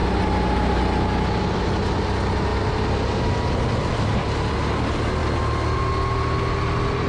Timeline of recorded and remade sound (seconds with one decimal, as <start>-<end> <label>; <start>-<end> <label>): 0.0-7.1 recorded